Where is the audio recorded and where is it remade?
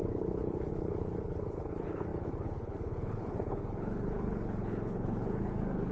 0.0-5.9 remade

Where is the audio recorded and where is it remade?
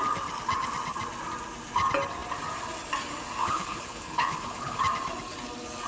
0.0-3.4 recorded; 3.4-4.8 remade; 4.8-5.9 recorded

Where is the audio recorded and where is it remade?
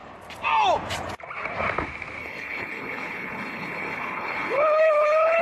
0.0-2.2 recorded; 2.2-5.4 remade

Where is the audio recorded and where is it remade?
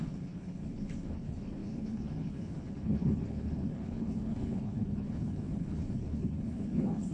0.0-7.1 remade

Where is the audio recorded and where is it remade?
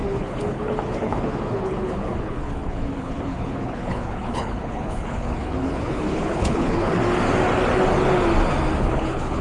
0.0-7.0 remade; 7.0-8.8 recorded; 8.8-9.4 remade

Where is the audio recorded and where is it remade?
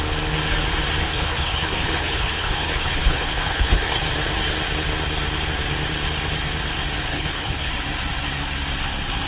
0.0-1.0 recorded; 1.0-4.0 remade; 4.0-7.1 recorded; 7.1-7.7 remade; 7.7-9.3 recorded